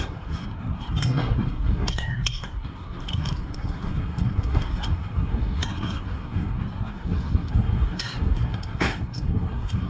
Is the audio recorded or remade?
remade